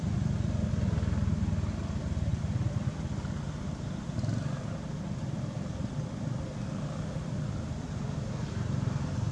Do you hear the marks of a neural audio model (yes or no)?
no